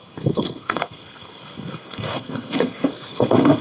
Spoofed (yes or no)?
yes